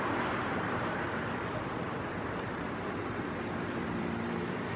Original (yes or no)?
no